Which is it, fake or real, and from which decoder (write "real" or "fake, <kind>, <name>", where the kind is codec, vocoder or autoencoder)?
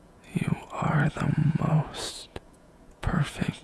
fake, vocoder, Vocos